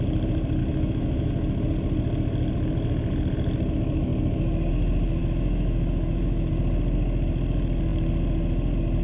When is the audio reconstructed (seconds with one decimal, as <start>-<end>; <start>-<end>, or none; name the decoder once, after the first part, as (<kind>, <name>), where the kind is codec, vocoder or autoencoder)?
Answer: 0.6-1.3 (autoencoder, DAC-VAE); 5.2-6.5